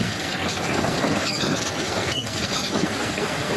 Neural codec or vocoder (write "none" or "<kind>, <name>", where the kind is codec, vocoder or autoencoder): codec, SNAC